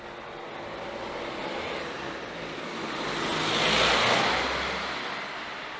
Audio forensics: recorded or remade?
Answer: recorded